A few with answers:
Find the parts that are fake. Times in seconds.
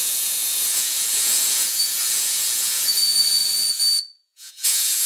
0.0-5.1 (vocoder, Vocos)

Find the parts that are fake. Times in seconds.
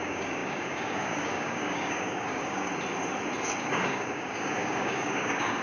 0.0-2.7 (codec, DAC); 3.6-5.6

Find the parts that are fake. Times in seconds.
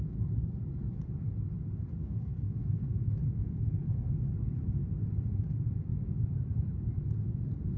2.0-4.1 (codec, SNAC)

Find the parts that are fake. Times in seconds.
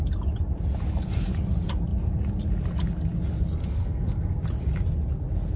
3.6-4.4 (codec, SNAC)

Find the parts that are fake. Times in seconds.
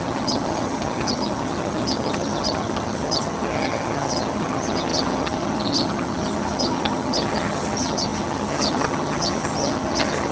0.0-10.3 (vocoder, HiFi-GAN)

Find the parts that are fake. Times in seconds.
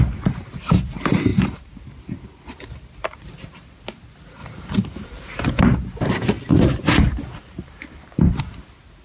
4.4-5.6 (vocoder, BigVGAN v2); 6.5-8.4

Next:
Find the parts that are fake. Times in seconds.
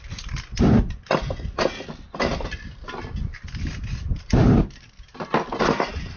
none